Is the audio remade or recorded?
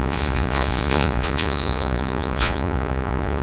remade